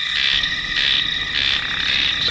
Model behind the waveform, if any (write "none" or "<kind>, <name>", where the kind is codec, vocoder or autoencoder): none